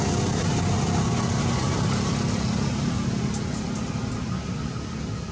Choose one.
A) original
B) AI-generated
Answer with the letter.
A